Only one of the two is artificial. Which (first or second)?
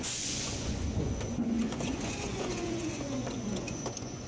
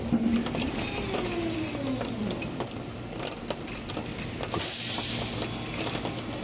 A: first